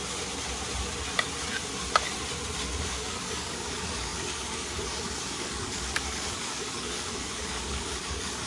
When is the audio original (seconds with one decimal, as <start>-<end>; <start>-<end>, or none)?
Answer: 0.0-2.8